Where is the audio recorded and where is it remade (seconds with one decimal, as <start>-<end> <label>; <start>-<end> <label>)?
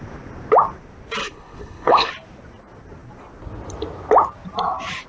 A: 0.0-1.2 recorded; 1.2-2.1 remade; 2.1-5.1 recorded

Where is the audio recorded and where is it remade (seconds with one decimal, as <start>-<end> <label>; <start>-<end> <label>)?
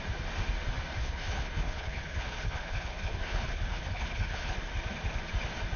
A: 0.0-1.0 recorded; 1.0-4.5 remade; 4.5-5.8 recorded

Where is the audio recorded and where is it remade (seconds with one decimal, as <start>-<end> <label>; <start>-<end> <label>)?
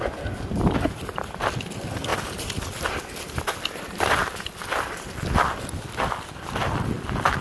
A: 0.0-7.4 recorded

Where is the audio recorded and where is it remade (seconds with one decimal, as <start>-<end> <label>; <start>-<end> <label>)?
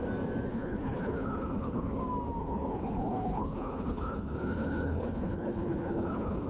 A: 0.0-0.5 recorded; 0.5-2.0 remade; 2.0-2.4 recorded; 2.4-6.5 remade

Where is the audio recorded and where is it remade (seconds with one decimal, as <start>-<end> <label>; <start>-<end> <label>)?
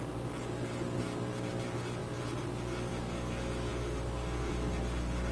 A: 0.0-5.3 recorded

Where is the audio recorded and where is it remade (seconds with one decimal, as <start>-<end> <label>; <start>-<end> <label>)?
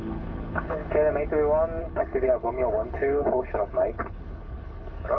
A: 0.0-0.8 remade; 0.8-1.8 recorded; 1.8-5.2 remade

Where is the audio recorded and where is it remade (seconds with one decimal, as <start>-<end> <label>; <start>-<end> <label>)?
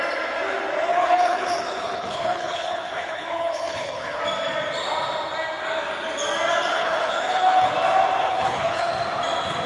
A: 0.0-0.9 recorded; 0.9-4.2 remade; 4.2-6.7 recorded; 6.7-7.7 remade; 7.7-8.2 recorded; 8.2-8.9 remade; 8.9-9.7 recorded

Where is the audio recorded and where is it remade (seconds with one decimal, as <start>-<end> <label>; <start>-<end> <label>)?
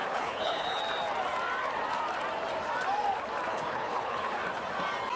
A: 0.0-0.8 remade; 0.8-3.5 recorded; 3.5-4.4 remade; 4.4-5.2 recorded